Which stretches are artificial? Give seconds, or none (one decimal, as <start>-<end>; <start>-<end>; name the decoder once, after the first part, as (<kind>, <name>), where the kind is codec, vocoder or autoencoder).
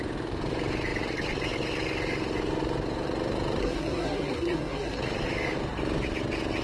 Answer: 3.6-5.0 (codec, SNAC)